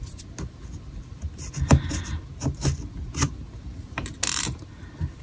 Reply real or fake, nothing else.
real